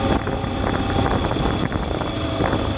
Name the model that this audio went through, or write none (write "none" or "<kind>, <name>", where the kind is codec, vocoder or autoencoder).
none